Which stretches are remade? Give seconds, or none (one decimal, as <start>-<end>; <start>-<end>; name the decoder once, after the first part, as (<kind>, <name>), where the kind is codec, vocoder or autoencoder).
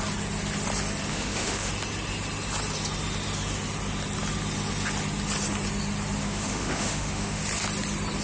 1.1-1.7 (autoencoder, DAC-VAE); 6.2-7.4